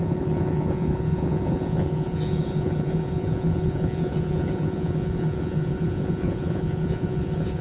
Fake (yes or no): yes